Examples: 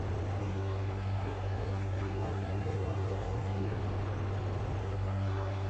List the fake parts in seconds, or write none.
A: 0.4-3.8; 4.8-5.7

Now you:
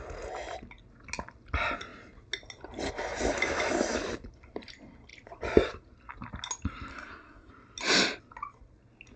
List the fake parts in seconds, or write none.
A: 6.9-7.5

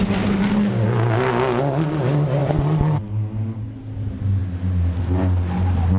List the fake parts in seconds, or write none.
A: none

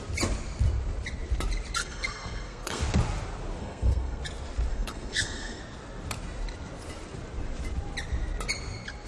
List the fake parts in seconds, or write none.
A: 1.8-2.8; 3.6-4.2; 4.7-5.6

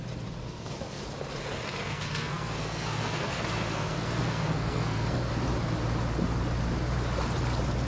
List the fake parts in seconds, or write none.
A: 0.4-1.0; 1.8-5.3